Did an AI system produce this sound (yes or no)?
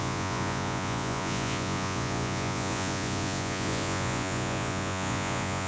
yes